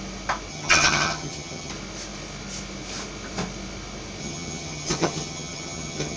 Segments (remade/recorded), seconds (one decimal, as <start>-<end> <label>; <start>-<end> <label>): 0.0-0.5 recorded; 0.5-1.7 remade; 1.7-4.2 recorded; 4.2-6.2 remade